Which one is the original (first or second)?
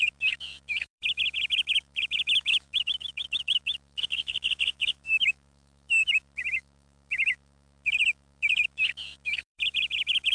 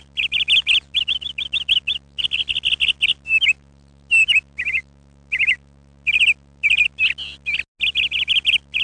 second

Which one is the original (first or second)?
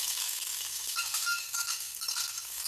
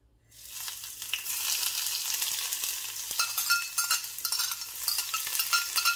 second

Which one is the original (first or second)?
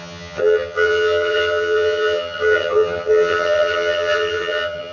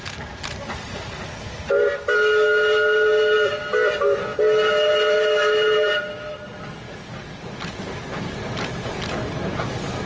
second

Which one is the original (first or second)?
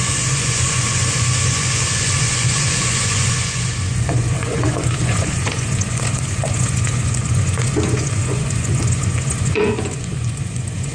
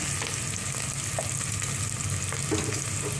second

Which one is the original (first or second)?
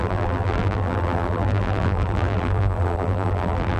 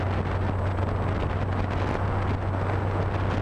second